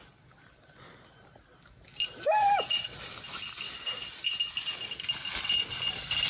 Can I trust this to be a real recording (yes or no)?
yes